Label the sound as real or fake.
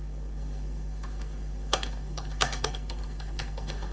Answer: fake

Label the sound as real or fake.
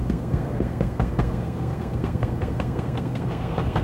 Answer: fake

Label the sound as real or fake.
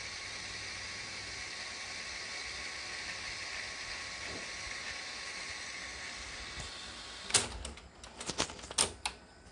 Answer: real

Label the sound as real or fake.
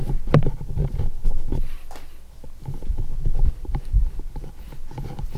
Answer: real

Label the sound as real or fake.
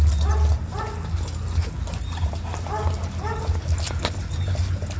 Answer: real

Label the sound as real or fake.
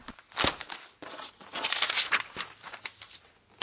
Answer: real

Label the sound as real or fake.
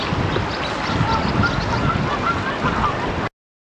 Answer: real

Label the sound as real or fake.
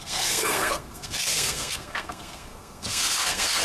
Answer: fake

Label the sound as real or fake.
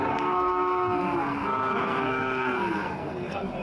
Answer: fake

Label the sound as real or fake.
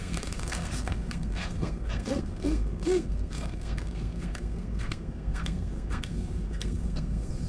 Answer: fake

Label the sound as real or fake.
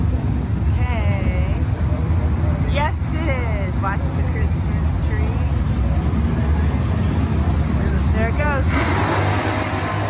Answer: real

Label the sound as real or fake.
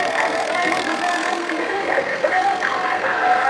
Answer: fake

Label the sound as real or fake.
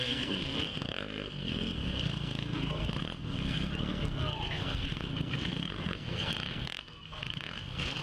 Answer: fake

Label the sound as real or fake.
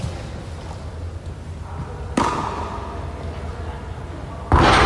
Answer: real